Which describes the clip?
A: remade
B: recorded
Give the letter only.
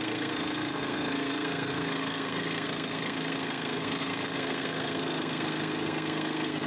A